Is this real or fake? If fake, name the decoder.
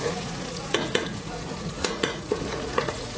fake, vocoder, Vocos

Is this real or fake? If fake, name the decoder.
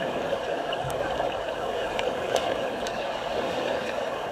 fake, codec, DAC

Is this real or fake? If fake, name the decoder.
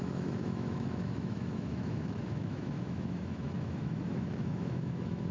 fake, autoencoder, DAC-VAE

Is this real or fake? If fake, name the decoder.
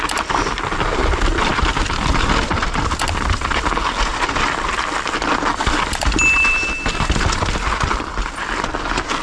real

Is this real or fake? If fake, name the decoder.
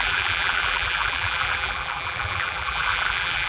fake, vocoder, BigVGAN v2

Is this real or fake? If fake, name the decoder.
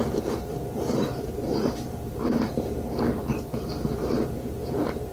fake, vocoder, BigVGAN v2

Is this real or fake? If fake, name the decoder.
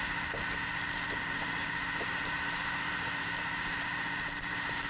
fake, vocoder, BigVGAN v2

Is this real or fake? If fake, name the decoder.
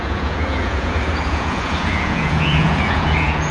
fake, vocoder, Vocos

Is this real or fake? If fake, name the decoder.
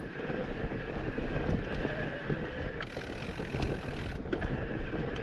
real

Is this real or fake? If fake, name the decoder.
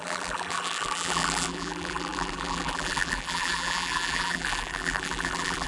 fake, vocoder, BigVGAN v2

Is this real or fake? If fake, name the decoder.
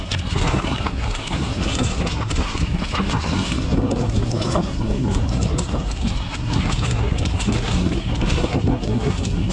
fake, codec, SNAC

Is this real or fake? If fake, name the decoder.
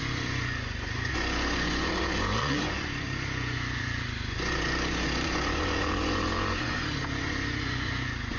fake, vocoder, Vocos